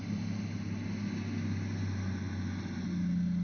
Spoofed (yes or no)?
no